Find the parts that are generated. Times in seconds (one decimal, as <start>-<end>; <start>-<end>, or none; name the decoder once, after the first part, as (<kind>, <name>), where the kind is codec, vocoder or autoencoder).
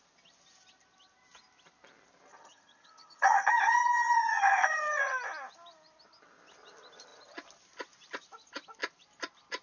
2.3-5.0 (vocoder, HiFi-GAN)